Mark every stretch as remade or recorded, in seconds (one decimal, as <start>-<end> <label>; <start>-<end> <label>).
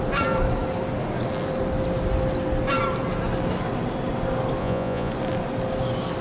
0.0-4.6 recorded; 4.6-5.1 remade; 5.1-6.2 recorded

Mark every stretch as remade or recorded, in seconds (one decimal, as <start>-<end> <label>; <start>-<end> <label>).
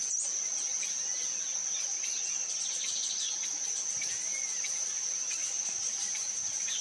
0.0-5.4 recorded; 5.4-6.8 remade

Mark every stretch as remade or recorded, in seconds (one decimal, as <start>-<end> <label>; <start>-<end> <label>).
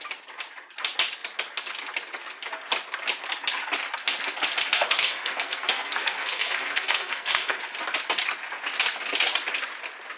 0.0-4.7 recorded; 4.7-7.6 remade; 7.6-10.2 recorded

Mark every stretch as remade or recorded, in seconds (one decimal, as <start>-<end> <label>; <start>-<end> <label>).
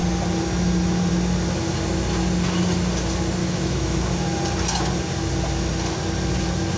0.0-3.4 recorded; 3.4-4.0 remade; 4.0-6.8 recorded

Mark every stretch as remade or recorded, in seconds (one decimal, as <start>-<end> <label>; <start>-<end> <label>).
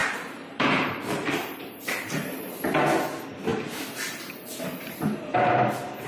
0.0-2.5 remade; 2.5-6.1 recorded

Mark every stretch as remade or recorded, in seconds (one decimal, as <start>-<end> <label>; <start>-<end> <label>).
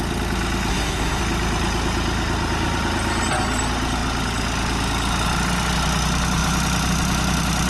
0.0-0.7 recorded; 0.7-1.2 remade; 1.2-7.7 recorded